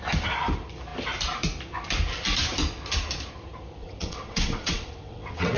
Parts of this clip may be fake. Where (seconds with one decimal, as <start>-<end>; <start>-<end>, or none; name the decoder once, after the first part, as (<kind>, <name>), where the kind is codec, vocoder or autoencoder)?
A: 3.8-5.6 (vocoder, WaveNeXt)